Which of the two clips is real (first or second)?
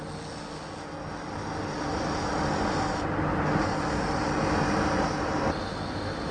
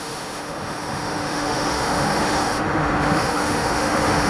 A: first